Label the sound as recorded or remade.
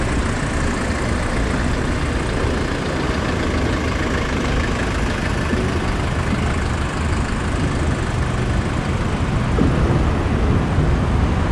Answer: recorded